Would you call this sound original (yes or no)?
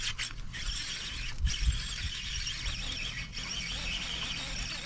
yes